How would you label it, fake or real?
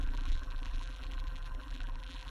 fake